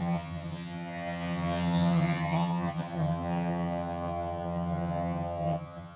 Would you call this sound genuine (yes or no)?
no